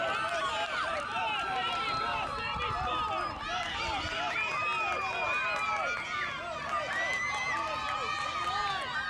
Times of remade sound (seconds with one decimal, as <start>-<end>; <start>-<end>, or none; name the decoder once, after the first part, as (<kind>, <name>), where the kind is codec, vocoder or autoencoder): 0.9-2.9 (vocoder, BigVGAN v2)